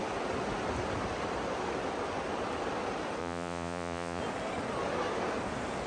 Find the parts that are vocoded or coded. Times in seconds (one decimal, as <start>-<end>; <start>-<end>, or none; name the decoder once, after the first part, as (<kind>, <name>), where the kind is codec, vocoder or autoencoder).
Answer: 3.2-4.2 (vocoder, Vocos)